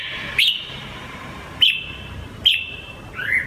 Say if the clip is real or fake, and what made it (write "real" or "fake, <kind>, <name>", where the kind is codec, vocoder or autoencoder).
fake, vocoder, BigVGAN v2